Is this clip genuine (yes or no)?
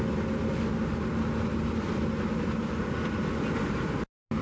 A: yes